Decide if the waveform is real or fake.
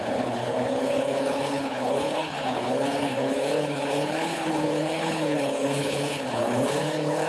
fake